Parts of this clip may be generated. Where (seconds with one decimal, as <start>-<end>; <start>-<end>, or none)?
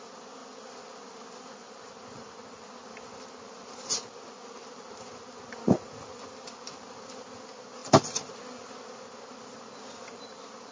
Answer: none